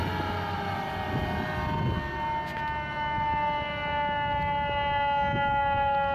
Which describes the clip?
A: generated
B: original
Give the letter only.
B